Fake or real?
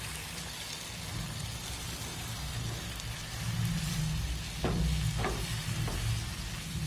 real